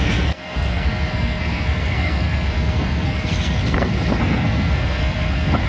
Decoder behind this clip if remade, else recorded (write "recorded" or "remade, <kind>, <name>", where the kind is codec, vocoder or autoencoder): remade, codec, SNAC